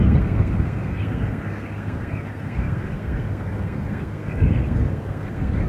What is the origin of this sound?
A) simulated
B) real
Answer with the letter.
A